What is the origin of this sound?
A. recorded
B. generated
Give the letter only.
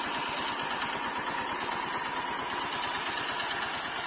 A